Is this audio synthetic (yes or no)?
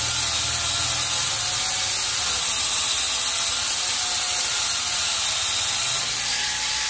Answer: no